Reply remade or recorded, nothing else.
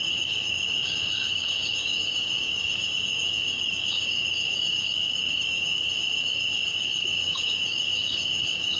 remade